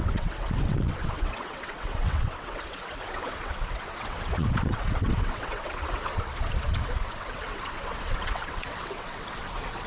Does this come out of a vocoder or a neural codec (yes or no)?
yes